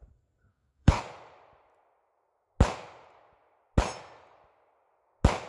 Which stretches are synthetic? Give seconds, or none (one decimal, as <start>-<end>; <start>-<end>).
0.5-1.0